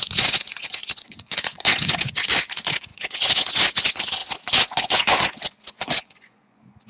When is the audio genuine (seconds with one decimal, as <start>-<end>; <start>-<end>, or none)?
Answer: none